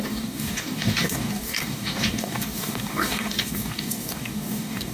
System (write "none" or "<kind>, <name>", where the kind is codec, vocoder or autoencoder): codec, DAC